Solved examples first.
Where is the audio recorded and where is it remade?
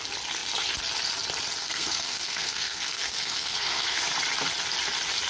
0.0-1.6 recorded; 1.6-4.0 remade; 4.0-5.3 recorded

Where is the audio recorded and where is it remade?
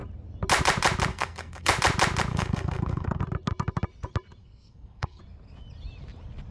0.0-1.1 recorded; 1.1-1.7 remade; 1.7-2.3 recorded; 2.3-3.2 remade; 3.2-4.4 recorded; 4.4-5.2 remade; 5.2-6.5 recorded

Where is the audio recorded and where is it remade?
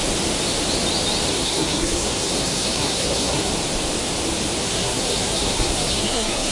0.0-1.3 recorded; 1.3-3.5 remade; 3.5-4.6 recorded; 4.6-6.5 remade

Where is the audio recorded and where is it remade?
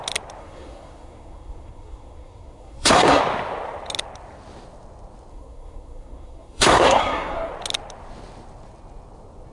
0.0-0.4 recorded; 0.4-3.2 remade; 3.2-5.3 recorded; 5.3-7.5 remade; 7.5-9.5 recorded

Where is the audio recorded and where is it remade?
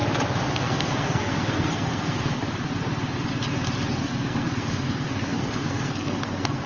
0.0-0.5 recorded; 0.5-2.4 remade; 2.4-3.9 recorded; 3.9-6.7 remade